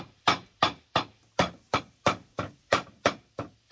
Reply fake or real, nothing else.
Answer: real